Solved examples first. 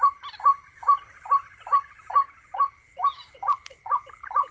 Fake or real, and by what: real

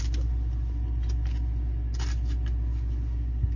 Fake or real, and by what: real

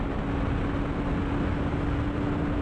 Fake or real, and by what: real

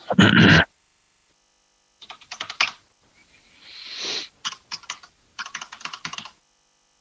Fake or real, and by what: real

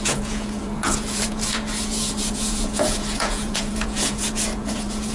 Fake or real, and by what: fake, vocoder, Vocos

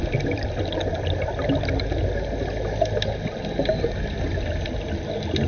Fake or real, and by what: real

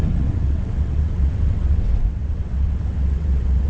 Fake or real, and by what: fake, vocoder, WaveNeXt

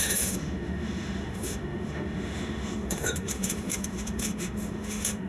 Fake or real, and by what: fake, autoencoder, DAC-VAE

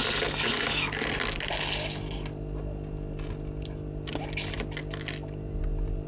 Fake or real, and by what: real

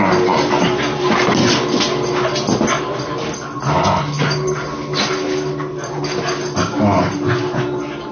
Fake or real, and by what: real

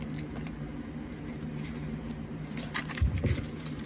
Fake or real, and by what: fake, vocoder, BigVGAN v2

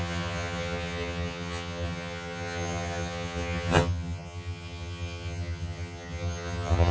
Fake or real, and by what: fake, vocoder, HiFi-GAN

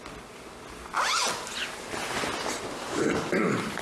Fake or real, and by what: real